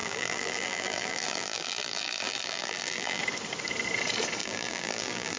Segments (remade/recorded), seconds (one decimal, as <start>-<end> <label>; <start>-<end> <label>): 0.0-3.2 remade; 3.2-4.4 recorded; 4.4-5.4 remade